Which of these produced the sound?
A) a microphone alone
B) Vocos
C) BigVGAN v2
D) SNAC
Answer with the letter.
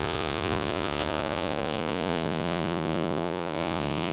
B